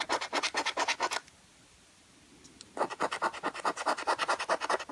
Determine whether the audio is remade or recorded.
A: recorded